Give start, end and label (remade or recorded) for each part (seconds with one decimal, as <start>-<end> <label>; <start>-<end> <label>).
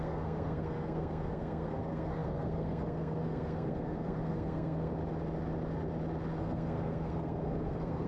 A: 0.0-4.9 remade; 4.9-6.4 recorded; 6.4-8.1 remade